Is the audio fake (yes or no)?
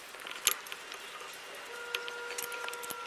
no